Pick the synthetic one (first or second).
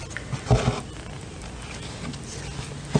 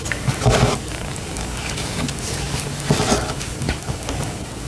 second